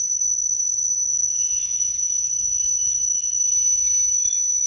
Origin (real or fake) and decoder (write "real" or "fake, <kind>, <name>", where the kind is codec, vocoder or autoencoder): real